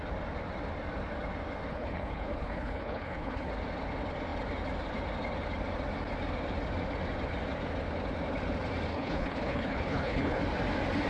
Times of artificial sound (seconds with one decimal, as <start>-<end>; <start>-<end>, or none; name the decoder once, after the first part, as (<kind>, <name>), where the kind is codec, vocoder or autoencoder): 1.7-3.5 (codec, HILCodec); 8.9-10.4